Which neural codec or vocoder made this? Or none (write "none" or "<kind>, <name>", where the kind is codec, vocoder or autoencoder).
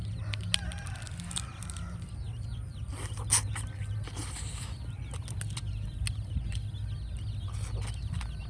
none